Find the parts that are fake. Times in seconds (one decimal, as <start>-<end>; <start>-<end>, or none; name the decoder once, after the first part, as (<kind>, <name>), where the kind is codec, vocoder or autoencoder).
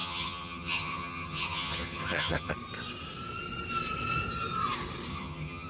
0.0-2.5 (vocoder, HiFi-GAN); 5.1-5.7